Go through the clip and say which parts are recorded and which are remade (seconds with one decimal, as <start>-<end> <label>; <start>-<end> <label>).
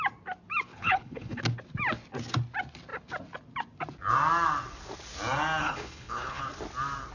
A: 0.0-0.7 recorded; 0.7-1.4 remade; 1.4-5.6 recorded; 5.6-6.4 remade; 6.4-7.1 recorded